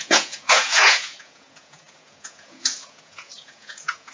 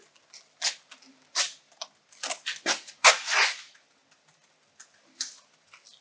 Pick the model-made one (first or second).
first